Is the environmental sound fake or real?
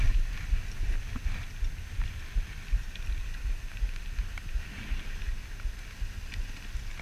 real